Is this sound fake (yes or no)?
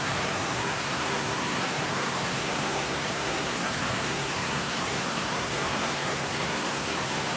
yes